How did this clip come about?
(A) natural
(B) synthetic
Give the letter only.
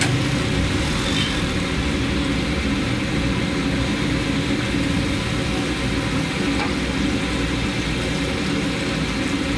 A